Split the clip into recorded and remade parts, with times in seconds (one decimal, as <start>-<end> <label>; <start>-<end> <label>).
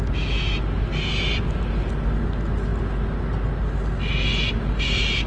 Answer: 0.0-5.3 recorded